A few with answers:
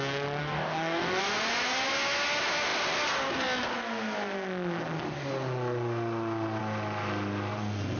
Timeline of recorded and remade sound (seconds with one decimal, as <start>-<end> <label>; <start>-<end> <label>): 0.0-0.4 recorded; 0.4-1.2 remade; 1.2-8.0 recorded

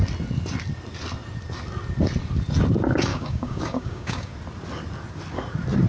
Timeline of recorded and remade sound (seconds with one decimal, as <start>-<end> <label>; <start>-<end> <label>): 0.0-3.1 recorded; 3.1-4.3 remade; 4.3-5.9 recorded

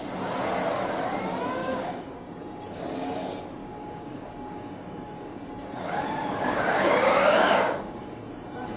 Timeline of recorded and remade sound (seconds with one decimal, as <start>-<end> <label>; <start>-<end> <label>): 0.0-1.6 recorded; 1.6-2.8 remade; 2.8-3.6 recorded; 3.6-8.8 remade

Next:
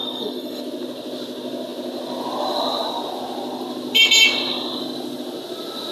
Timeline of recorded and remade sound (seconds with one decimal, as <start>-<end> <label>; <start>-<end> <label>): 0.0-0.6 remade; 0.6-5.9 recorded

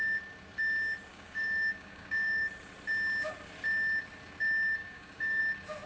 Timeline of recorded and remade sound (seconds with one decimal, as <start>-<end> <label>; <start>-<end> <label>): 0.0-1.1 recorded; 1.1-2.5 remade; 2.5-4.8 recorded; 4.8-5.4 remade; 5.4-5.9 recorded